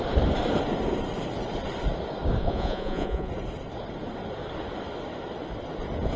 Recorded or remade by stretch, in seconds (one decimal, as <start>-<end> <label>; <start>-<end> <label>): 0.0-2.4 recorded; 2.4-3.3 remade; 3.3-6.2 recorded